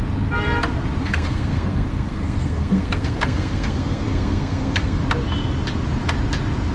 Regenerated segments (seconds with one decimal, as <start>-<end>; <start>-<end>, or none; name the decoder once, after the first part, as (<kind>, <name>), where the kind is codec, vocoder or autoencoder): 1.0-5.0 (codec, SNAC)